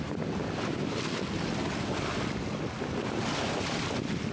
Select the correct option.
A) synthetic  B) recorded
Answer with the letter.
B